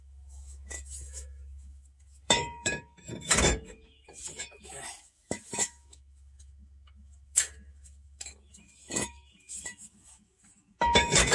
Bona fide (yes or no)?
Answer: no